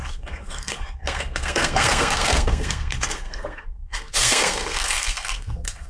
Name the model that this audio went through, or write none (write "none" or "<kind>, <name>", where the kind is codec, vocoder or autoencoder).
codec, SNAC